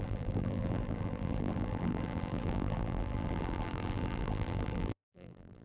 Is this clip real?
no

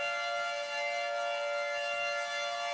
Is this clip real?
yes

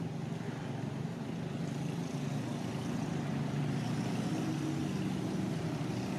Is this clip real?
yes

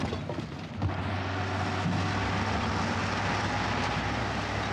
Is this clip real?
yes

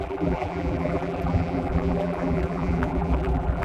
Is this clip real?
no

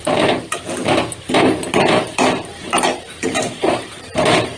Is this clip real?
no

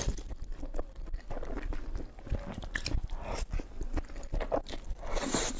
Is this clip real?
no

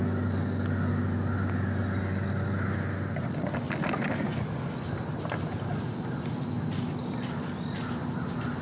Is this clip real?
yes